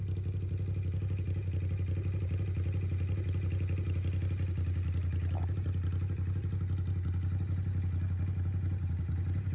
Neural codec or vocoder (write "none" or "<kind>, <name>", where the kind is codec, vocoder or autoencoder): none